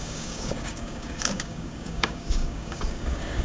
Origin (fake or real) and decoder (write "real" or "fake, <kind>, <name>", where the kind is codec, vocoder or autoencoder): fake, codec, DAC